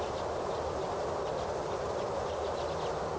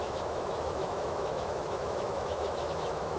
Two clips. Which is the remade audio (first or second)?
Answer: second